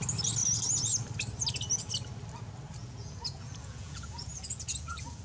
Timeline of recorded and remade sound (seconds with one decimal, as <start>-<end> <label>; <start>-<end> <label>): 0.0-2.8 recorded; 2.8-5.2 remade